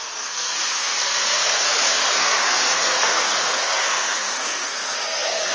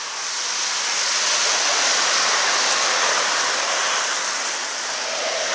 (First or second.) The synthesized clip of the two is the first